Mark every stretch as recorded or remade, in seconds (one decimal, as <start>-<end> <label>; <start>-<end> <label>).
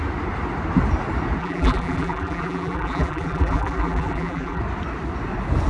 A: 0.0-1.4 recorded; 1.4-4.6 remade; 4.6-5.7 recorded